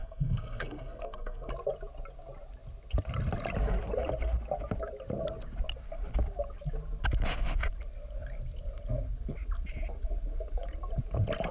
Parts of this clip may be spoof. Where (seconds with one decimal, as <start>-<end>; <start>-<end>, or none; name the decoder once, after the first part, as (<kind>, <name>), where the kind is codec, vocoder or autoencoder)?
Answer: 0.0-1.5 (codec, SNAC)